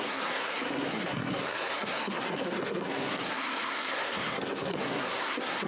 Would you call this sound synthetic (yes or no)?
yes